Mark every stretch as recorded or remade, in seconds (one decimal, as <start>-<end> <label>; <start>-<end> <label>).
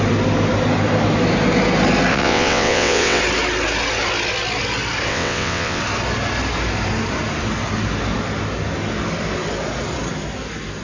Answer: 0.0-2.1 recorded; 2.1-3.2 remade; 3.2-5.1 recorded; 5.1-5.8 remade; 5.8-10.8 recorded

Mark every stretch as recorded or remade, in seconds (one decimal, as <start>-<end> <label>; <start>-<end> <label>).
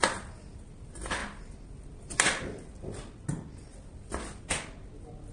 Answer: 0.0-5.3 recorded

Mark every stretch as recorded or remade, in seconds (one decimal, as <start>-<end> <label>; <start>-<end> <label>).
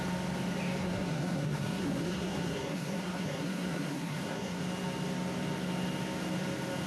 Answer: 0.0-0.8 recorded; 0.8-4.6 remade; 4.6-6.9 recorded